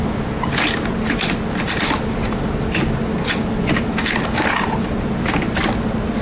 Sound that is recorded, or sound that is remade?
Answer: recorded